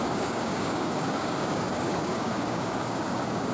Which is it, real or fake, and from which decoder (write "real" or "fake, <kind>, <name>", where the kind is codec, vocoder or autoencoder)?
fake, codec, DAC